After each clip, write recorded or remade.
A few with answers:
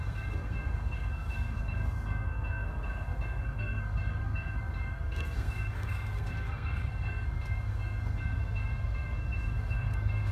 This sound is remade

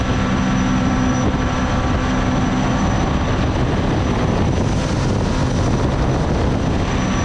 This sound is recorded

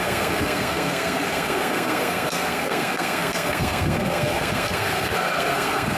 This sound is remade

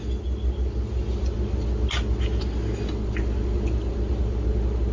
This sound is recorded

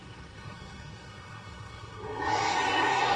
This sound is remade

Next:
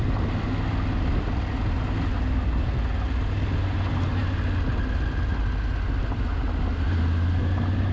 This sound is recorded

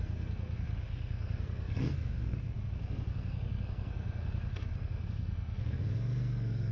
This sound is remade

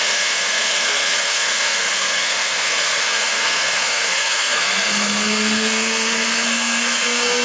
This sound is remade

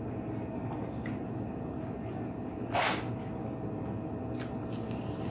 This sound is recorded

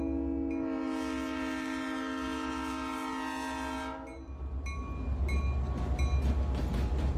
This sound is recorded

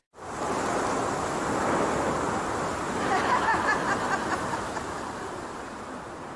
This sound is recorded